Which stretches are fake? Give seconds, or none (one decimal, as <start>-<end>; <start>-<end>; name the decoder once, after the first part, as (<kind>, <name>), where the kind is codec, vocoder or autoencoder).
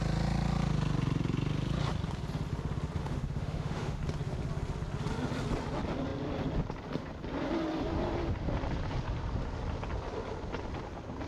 3.0-4.0 (autoencoder, DAC-VAE)